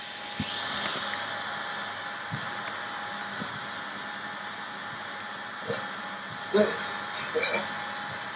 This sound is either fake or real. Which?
real